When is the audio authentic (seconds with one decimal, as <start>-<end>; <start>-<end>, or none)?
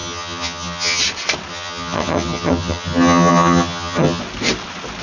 1.0-1.5; 4.2-5.0